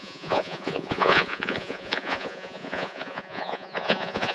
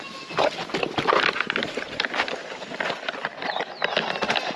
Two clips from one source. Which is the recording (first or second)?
second